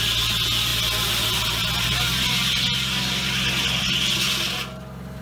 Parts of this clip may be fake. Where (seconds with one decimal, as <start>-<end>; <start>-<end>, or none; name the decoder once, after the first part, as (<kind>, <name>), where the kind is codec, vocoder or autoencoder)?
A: none